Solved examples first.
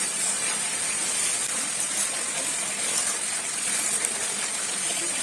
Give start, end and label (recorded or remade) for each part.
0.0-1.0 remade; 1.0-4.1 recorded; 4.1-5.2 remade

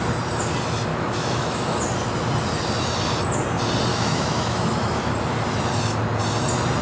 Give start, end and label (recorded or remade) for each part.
0.0-0.9 recorded; 0.9-1.8 remade; 1.8-3.9 recorded; 3.9-5.1 remade; 5.1-6.8 recorded